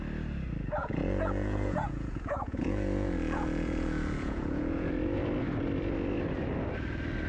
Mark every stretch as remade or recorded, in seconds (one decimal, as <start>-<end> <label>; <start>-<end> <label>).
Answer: 0.0-0.8 recorded; 0.8-4.9 remade; 4.9-7.3 recorded